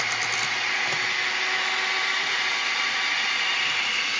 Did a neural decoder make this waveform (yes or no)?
no